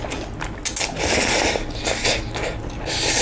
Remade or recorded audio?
recorded